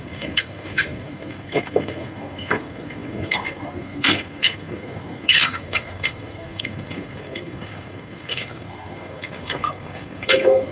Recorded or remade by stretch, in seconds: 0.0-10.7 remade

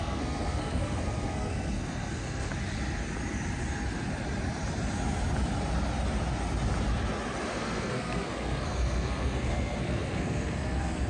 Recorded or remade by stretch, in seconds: 0.0-2.5 remade; 2.5-7.5 recorded; 7.5-11.1 remade

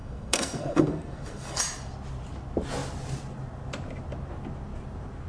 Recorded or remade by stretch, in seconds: 0.0-1.6 remade; 1.6-5.3 recorded

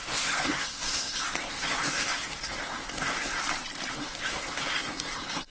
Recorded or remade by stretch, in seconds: 0.0-3.4 remade; 3.4-3.9 recorded; 3.9-5.5 remade

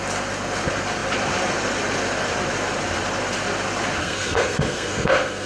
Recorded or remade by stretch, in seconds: 0.0-4.0 recorded; 4.0-5.5 remade

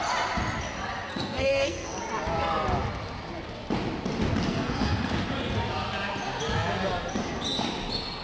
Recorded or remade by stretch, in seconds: 0.0-1.1 recorded; 1.1-2.0 remade; 2.0-4.5 recorded; 4.5-5.1 remade; 5.1-8.2 recorded

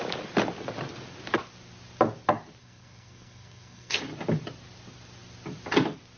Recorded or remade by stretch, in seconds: 0.0-2.6 recorded; 2.6-4.0 remade; 4.0-6.2 recorded

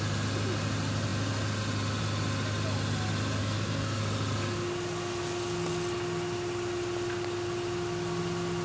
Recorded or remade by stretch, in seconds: 0.0-3.4 recorded; 3.4-4.0 remade; 4.0-8.6 recorded